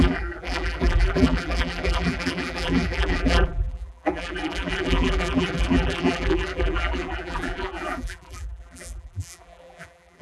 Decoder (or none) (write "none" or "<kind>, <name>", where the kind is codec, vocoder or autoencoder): vocoder, BigVGAN v2